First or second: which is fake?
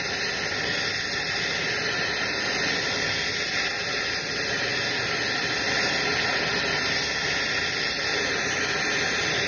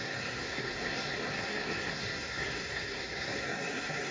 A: second